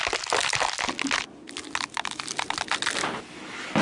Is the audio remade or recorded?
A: recorded